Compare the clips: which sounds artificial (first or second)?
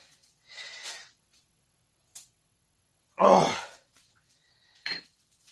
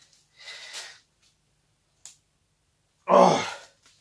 first